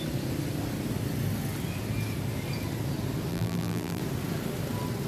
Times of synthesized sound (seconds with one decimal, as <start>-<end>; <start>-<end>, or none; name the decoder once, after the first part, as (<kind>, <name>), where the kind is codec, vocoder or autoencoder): 3.3-4.0 (vocoder, BigVGAN v2)